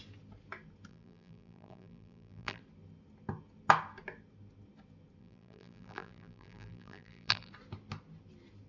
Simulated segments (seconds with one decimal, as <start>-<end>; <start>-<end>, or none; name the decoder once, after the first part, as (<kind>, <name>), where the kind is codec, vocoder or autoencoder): 0.9-2.6 (vocoder, BigVGAN v2); 5.2-7.5

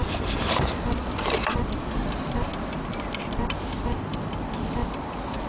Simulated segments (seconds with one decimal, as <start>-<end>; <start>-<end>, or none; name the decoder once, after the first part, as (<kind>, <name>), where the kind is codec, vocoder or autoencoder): 0.0-2.5 (vocoder, BigVGAN v2); 3.3-5.5

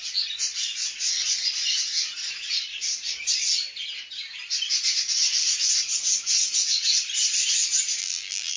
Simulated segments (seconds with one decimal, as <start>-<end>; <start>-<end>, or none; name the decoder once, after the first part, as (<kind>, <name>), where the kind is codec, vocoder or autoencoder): 8.0-8.6 (vocoder, BigVGAN v2)